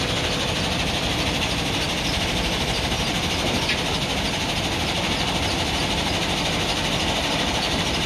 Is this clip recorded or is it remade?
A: remade